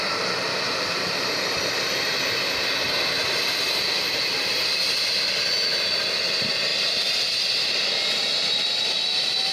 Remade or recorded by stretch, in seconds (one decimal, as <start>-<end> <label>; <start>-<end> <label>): 0.0-9.5 recorded

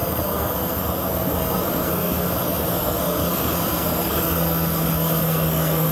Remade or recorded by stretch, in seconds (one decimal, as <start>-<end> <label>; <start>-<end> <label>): 0.0-5.9 remade

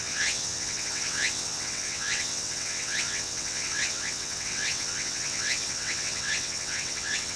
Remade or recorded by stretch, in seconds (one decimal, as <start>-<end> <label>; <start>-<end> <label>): 0.0-7.4 remade

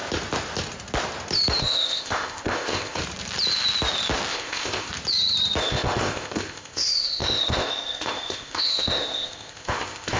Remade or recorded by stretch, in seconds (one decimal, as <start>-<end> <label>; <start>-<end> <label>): 0.0-1.6 recorded; 1.6-3.0 remade; 3.0-4.3 recorded; 4.3-4.9 remade; 4.9-5.6 recorded; 5.6-10.2 remade

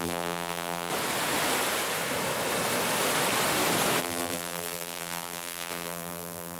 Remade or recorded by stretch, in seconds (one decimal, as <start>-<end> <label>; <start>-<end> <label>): 0.0-0.9 remade; 0.9-4.0 recorded; 4.0-6.6 remade

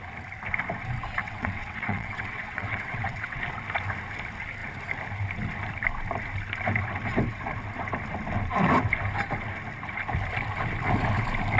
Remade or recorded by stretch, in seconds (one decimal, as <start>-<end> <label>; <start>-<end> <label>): 0.0-1.2 recorded; 1.2-3.4 remade; 3.4-11.6 recorded

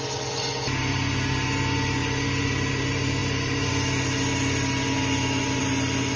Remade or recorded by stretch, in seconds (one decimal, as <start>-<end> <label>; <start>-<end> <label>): 0.0-6.2 recorded